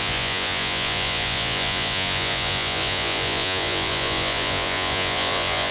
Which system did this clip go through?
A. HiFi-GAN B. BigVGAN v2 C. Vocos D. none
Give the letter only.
C